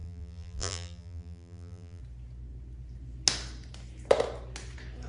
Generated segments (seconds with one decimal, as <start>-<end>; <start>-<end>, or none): 0.0-2.0